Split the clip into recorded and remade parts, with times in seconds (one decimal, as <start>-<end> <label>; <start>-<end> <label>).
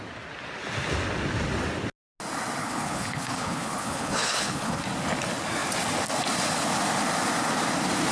0.0-2.6 recorded; 2.6-4.8 remade; 4.8-8.1 recorded